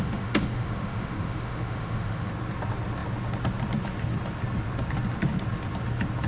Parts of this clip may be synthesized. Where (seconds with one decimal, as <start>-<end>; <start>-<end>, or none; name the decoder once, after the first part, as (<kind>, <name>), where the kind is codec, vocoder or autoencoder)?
0.0-2.3 (autoencoder, DAC-VAE)